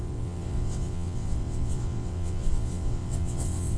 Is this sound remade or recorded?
remade